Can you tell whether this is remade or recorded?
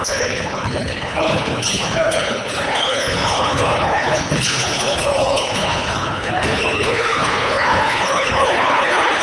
remade